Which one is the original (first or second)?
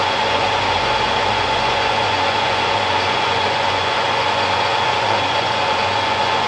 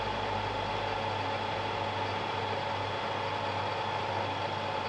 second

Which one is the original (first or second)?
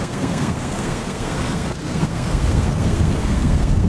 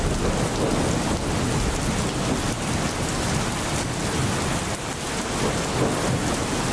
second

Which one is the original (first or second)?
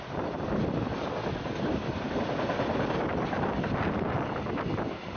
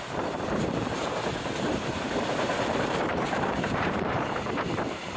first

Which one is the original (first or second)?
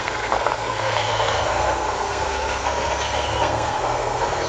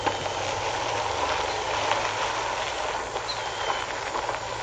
second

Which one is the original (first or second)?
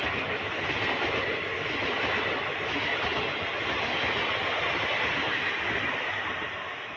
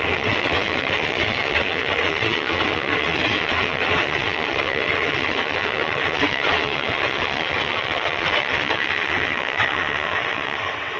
first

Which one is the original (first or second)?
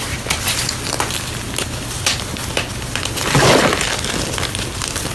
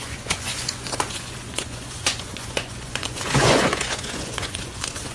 first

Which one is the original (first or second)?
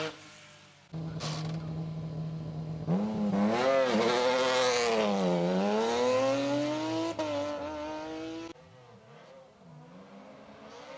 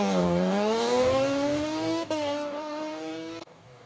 first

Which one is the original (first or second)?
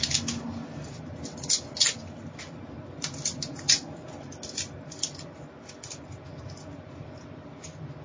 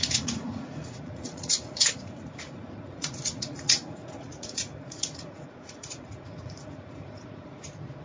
first